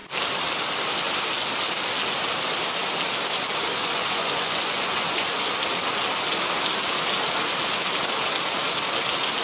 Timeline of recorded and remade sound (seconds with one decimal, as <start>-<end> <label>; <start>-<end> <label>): 0.0-3.8 recorded; 3.8-5.5 remade; 5.5-9.4 recorded